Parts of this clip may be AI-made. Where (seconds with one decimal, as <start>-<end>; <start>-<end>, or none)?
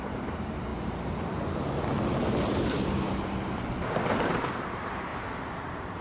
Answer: 0.0-0.7; 3.5-5.1